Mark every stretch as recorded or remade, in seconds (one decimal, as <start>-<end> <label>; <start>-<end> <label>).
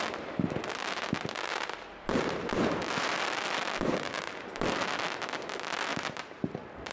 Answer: 0.0-5.9 recorded; 5.9-6.5 remade; 6.5-6.9 recorded